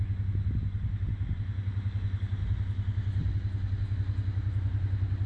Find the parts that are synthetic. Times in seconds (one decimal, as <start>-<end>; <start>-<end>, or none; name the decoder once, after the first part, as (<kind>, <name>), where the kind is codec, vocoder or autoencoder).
none